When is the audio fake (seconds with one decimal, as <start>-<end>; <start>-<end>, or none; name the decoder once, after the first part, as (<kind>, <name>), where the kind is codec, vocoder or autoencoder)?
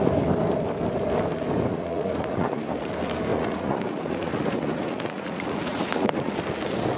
1.7-2.9 (vocoder, Vocos); 3.3-6.3